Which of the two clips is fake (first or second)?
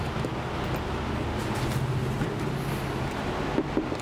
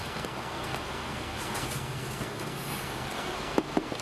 second